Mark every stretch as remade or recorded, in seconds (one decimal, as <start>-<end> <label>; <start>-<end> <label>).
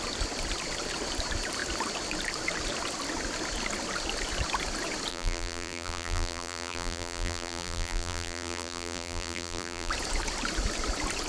0.0-5.1 recorded; 5.1-9.9 remade; 9.9-11.3 recorded